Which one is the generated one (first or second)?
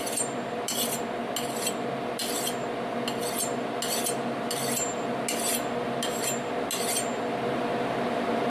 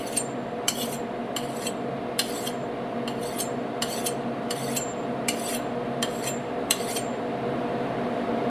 second